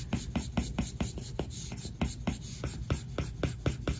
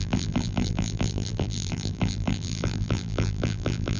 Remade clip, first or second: second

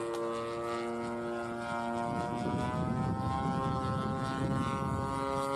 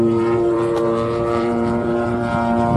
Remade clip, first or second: second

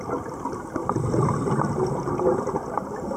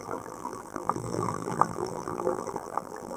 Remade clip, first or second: second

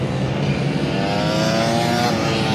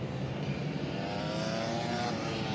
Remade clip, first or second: second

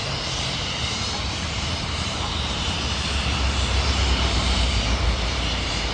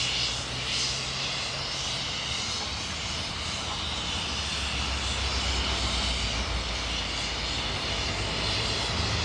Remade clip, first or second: first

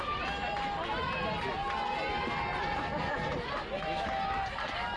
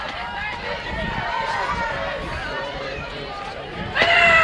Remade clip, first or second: second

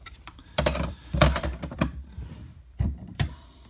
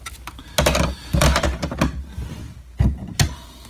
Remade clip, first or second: first